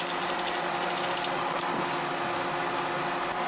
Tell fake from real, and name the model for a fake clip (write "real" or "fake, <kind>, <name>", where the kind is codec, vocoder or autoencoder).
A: real